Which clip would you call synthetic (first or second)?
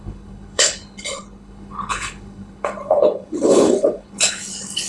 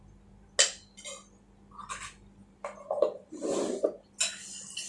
first